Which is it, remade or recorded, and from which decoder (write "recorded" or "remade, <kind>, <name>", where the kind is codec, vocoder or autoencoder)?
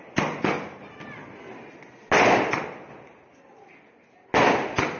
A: recorded